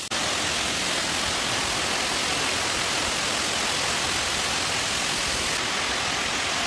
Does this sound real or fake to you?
real